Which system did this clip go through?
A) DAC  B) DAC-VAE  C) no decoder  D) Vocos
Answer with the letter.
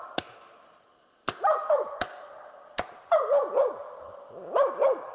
C